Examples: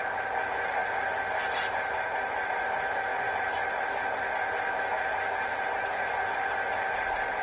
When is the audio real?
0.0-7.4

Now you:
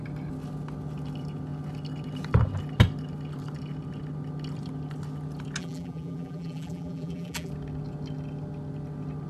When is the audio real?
0.0-5.6; 7.5-9.3